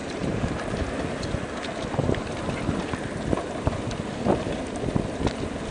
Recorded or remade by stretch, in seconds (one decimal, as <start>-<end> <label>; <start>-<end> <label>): 0.0-0.9 remade; 0.9-5.7 recorded